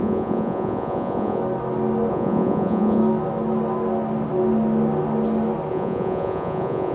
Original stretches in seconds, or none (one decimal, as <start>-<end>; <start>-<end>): 1.4-2.1; 3.0-5.7